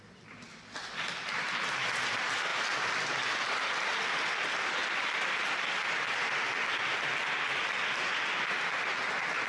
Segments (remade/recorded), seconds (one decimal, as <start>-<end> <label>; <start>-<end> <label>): 0.0-9.5 recorded